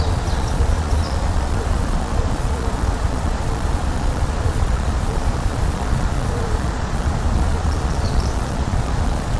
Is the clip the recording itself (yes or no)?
no